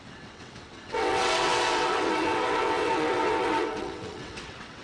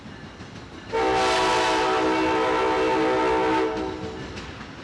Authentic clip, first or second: second